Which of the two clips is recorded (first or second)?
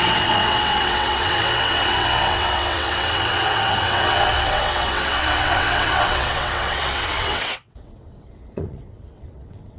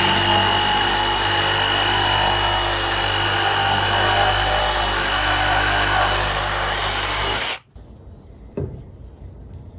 second